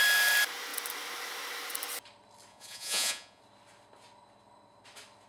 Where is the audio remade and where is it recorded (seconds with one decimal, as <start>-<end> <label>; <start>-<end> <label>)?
0.0-2.5 recorded; 2.5-3.4 remade; 3.4-5.3 recorded